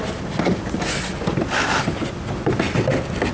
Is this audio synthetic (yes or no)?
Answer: no